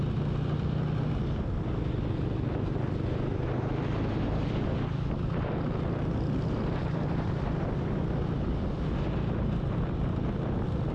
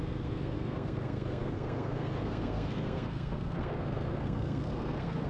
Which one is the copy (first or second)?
second